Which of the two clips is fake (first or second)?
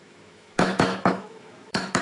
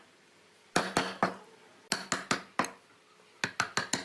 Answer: first